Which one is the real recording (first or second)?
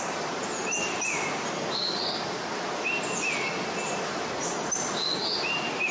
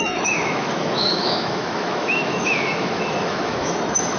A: first